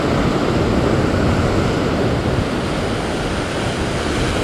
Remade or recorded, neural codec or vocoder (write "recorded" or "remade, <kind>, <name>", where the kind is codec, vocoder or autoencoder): recorded